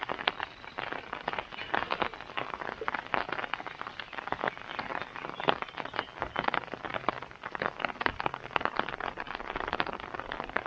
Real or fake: real